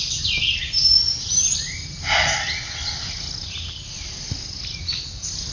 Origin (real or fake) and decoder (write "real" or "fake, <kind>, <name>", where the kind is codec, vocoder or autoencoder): real